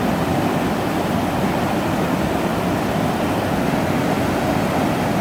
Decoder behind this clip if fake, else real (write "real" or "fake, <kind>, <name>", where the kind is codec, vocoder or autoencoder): real